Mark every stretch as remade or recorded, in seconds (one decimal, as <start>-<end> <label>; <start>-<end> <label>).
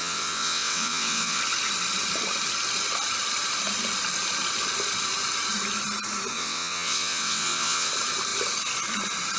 0.0-1.4 remade; 1.4-6.3 recorded; 6.3-7.9 remade; 7.9-9.4 recorded